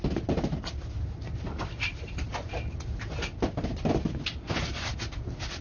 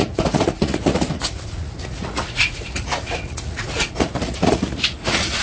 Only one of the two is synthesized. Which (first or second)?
second